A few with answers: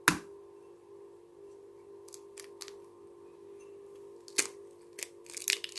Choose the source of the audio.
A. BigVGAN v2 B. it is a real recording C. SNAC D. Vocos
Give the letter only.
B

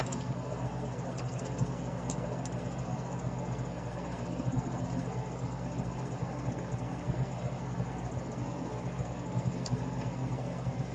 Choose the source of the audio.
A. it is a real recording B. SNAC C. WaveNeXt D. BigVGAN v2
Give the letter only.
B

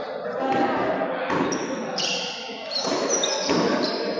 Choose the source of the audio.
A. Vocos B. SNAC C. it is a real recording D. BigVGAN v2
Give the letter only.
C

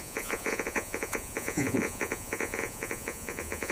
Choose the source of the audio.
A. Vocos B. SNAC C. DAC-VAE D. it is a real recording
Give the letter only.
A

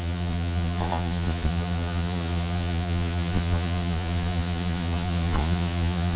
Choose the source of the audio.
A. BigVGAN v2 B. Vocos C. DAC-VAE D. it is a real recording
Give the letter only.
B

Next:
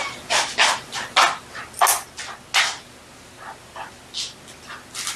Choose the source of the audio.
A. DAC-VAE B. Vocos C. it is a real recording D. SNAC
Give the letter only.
C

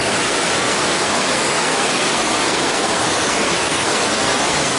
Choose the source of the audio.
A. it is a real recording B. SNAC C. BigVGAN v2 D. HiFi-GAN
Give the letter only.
B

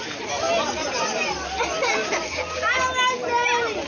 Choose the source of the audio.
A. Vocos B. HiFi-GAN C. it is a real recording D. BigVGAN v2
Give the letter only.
C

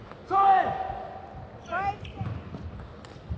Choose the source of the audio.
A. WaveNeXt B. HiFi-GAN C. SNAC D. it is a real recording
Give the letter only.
D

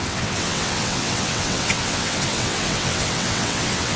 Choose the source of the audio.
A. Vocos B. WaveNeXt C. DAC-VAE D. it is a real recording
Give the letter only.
B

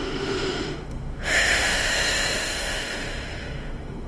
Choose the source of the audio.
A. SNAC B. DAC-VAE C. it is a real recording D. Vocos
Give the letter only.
B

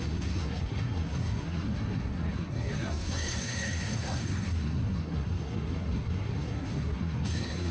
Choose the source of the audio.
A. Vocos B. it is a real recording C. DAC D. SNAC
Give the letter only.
D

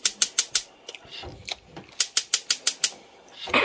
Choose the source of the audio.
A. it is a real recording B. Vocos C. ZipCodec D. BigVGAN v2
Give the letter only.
A